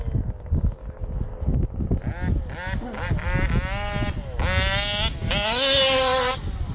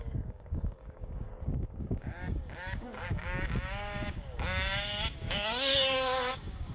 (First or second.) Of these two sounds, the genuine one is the first